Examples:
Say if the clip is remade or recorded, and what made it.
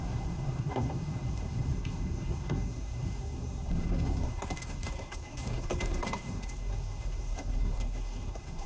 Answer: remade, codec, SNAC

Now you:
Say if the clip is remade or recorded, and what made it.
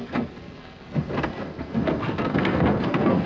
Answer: remade, codec, SNAC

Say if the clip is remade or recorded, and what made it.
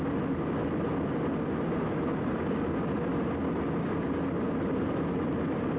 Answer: recorded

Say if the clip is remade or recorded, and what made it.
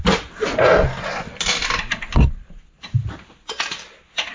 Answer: recorded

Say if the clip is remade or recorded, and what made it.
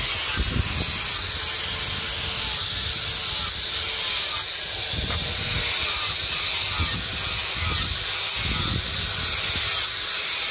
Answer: recorded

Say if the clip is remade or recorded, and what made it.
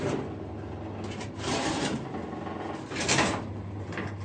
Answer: recorded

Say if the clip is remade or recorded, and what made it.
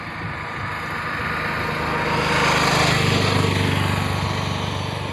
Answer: recorded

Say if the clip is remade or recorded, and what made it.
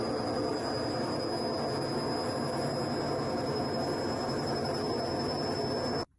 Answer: recorded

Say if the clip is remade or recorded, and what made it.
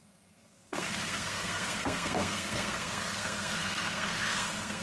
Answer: remade, codec, SNAC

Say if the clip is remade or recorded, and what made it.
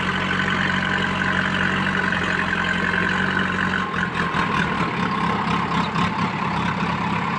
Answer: recorded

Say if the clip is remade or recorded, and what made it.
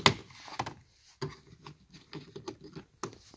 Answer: recorded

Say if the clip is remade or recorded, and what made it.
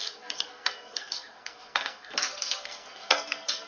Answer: remade, codec, SNAC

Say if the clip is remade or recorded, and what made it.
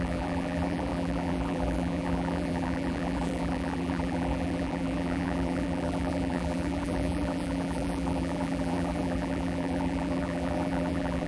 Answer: remade, vocoder, BigVGAN v2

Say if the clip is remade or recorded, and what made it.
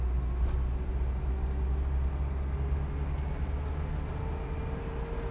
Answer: recorded